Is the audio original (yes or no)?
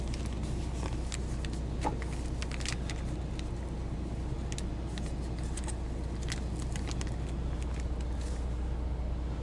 yes